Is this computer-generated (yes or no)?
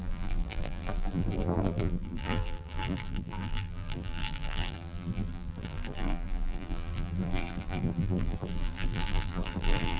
yes